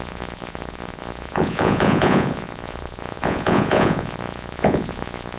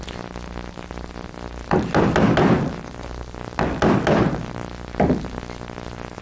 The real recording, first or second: second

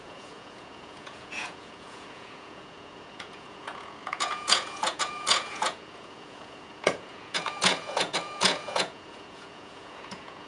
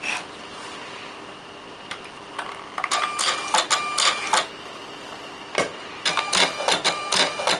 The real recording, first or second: second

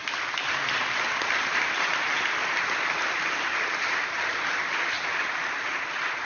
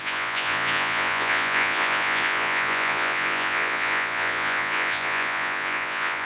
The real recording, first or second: first